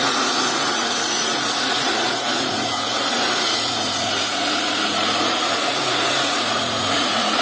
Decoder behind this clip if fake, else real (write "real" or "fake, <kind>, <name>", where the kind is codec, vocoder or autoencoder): fake, vocoder, Vocos